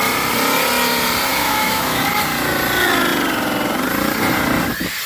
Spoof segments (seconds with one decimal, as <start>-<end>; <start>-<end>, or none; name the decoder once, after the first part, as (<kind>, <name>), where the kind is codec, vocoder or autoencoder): 1.3-2.0 (autoencoder, DAC-VAE)